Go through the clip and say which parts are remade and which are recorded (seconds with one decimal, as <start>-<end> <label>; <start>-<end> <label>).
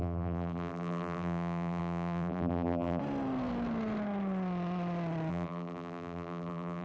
0.0-3.0 remade; 3.0-5.3 recorded; 5.3-6.8 remade